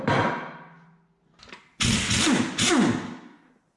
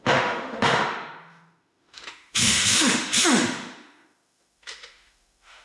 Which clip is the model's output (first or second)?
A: second